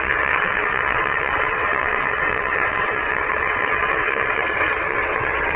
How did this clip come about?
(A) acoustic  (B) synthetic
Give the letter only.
B